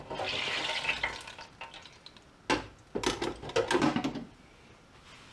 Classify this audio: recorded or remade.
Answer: recorded